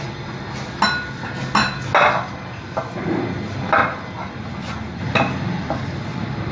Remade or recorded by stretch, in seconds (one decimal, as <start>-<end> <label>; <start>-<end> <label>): 0.0-6.5 recorded